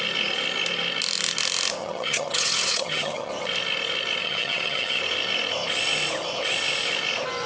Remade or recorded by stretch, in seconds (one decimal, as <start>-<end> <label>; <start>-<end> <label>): 0.0-1.8 recorded; 1.8-3.3 remade; 3.3-4.2 recorded; 4.2-5.0 remade; 5.0-7.5 recorded